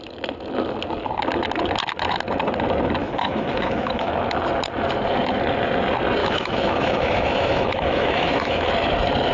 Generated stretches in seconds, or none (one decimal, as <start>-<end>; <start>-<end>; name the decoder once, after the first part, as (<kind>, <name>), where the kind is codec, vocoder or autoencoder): 3.0-4.1 (autoencoder, DAC-VAE); 6.2-8.7